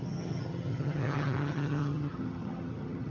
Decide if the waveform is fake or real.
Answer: fake